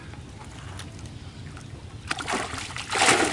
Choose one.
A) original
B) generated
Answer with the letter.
A